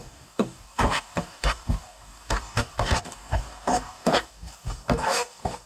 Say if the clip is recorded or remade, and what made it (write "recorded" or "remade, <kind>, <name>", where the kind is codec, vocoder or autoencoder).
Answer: remade, codec, DAC